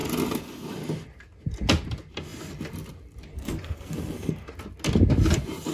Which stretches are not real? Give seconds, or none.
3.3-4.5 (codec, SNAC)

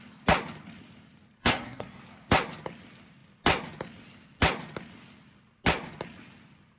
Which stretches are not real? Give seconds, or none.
1.4-2.0 (codec, SNAC)

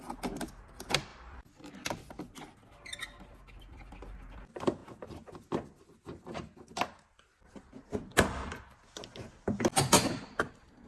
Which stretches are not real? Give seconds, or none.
none

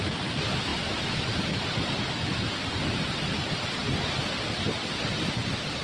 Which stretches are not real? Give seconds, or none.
none

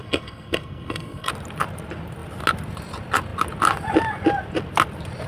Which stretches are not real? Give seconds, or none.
0.0-1.3 (codec, SNAC)

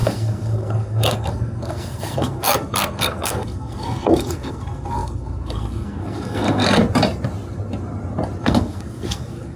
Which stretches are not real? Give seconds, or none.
0.0-6.8 (codec, SNAC); 8.4-9.6